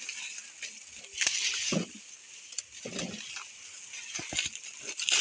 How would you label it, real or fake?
real